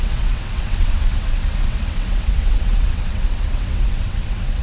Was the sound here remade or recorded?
remade